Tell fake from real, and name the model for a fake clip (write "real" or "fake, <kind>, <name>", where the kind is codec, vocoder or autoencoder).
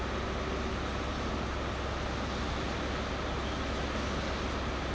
real